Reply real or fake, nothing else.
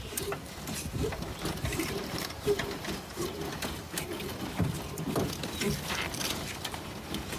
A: fake